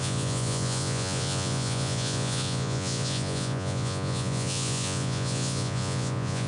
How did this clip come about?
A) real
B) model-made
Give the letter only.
B